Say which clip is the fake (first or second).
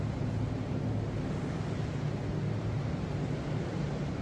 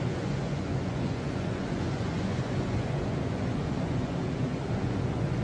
second